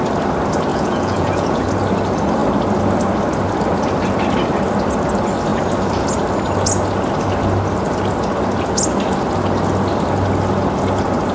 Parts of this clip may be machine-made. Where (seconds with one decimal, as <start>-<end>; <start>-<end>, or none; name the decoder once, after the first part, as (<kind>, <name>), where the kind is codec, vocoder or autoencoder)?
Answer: 0.7-1.6 (vocoder, Vocos)